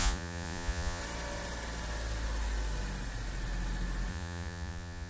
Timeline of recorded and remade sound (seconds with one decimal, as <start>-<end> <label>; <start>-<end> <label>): 0.0-1.0 remade; 1.0-4.1 recorded; 4.1-5.1 remade